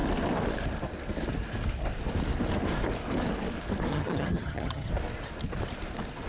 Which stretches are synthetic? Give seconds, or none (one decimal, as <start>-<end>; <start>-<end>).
3.9-4.9